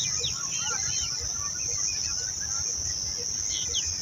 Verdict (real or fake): real